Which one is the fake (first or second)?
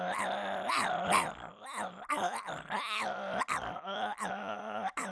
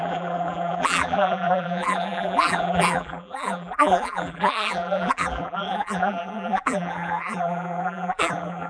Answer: second